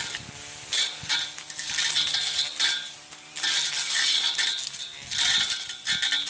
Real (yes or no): yes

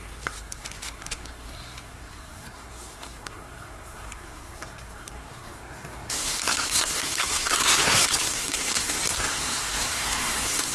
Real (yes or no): no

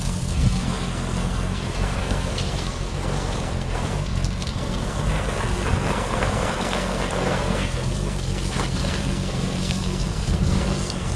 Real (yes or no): no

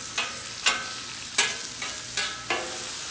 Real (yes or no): yes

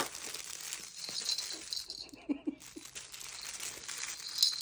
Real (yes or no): yes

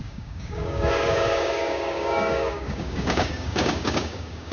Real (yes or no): no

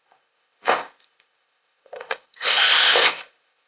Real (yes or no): no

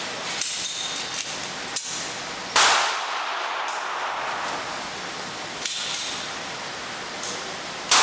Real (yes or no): yes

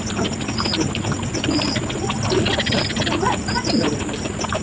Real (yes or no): yes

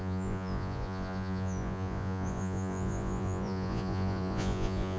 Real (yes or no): no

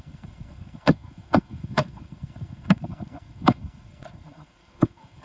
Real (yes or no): no